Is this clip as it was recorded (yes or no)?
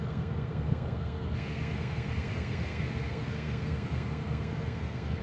no